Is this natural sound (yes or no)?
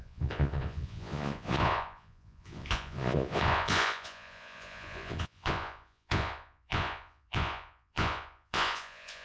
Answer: no